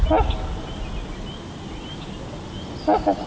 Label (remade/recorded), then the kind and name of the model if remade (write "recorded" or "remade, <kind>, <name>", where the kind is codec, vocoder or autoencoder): recorded